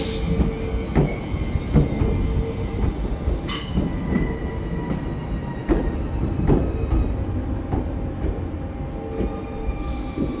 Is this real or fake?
real